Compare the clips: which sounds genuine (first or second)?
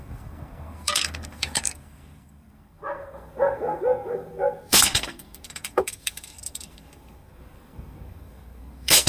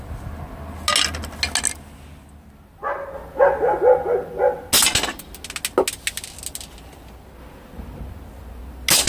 second